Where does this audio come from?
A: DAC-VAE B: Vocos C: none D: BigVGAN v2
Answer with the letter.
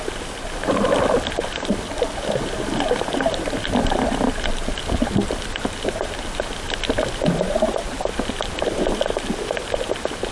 C